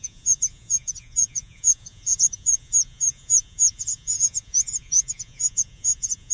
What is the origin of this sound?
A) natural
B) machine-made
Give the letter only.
B